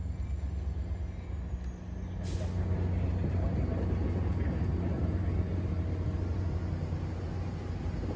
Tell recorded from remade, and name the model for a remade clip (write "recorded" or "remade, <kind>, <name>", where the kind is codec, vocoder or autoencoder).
recorded